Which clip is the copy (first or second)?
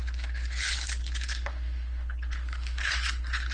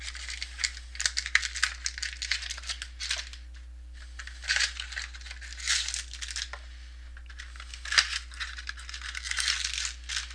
first